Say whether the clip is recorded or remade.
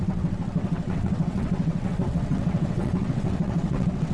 remade